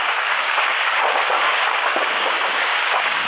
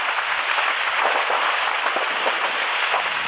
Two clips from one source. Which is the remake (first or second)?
first